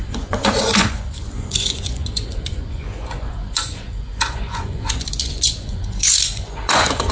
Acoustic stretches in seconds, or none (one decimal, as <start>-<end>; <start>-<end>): none